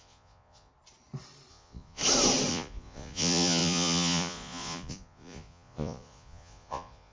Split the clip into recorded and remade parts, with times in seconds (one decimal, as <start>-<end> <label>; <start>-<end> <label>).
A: 0.0-0.7 remade; 0.7-1.5 recorded; 1.5-2.0 remade; 2.0-2.5 recorded; 2.5-7.1 remade